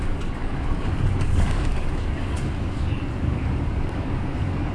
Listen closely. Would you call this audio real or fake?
fake